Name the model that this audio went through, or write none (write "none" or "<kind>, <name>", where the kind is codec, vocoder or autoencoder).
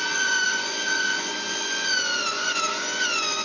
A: vocoder, Vocos